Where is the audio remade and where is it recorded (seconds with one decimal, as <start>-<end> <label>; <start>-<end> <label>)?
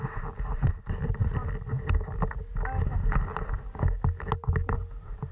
0.0-5.3 recorded